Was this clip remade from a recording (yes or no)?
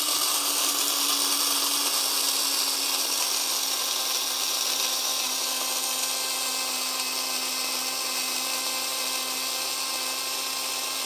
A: no